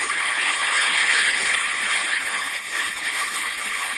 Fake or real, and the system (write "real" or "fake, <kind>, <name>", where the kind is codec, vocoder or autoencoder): fake, codec, HILCodec